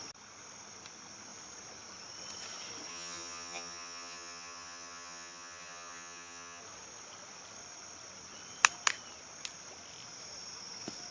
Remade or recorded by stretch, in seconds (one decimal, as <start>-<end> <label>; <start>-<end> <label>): 0.0-2.9 recorded; 2.9-6.6 remade; 6.6-11.1 recorded